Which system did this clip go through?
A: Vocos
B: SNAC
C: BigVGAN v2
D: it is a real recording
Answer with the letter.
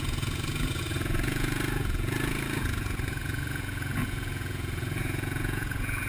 A